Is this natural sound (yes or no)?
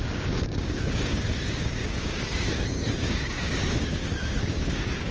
no